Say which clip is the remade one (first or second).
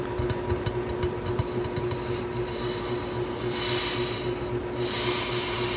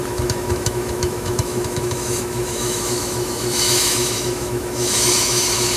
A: second